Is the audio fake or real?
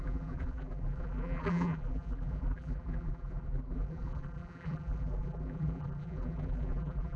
fake